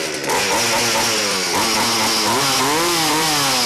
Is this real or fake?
real